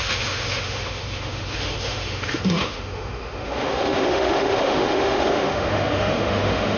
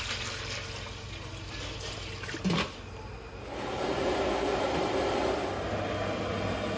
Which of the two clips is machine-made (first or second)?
first